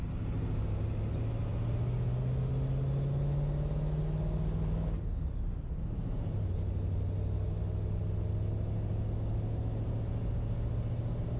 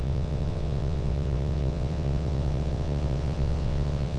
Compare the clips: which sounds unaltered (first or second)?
first